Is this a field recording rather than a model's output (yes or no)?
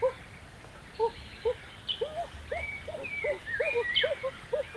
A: yes